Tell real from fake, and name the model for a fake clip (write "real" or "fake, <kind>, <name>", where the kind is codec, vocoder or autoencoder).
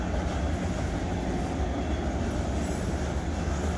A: real